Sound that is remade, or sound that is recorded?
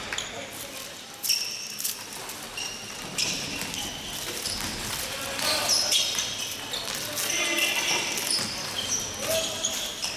recorded